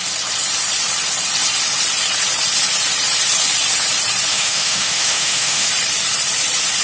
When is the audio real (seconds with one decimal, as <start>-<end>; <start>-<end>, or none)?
0.0-4.3; 5.7-6.8